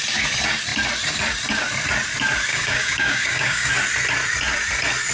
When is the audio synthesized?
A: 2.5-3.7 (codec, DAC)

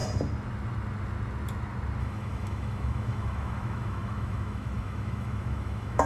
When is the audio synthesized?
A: 2.0-6.1 (autoencoder, DAC-VAE)

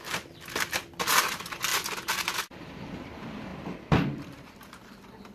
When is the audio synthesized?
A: 0.0-1.7 (vocoder, BigVGAN v2); 2.4-3.5; 4.2-5.3